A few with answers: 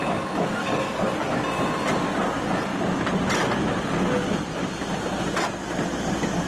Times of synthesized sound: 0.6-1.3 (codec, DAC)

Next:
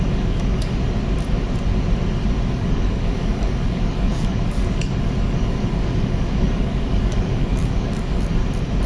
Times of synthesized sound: 0.0-0.7 (codec, DAC); 2.5-8.4

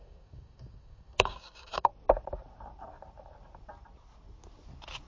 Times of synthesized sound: 0.0-1.9 (codec, DAC)

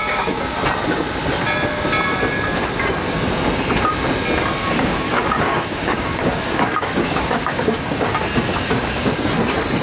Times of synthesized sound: 0.0-0.5 (codec, DAC); 4.6-8.1; 8.5-9.3

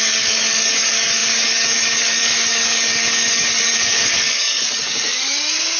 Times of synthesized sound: 0.0-5.8 (codec, DAC)

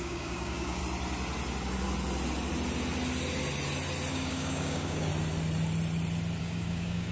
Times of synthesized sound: 0.0-0.8 (codec, DAC); 4.1-5.1; 6.4-7.1

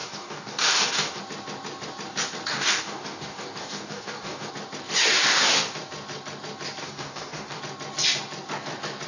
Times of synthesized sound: 0.0-1.2 (codec, DAC); 2.5-4.5; 6.8-7.6

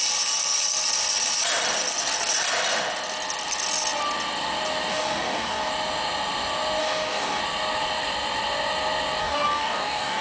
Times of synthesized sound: 4.9-5.7 (codec, DAC); 6.8-7.4; 9.2-10.2